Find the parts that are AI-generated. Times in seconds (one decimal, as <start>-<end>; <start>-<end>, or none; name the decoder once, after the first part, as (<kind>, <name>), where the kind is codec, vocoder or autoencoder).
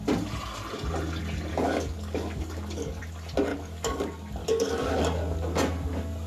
1.5-3.0 (codec, DAC); 3.5-4.0; 4.4-5.0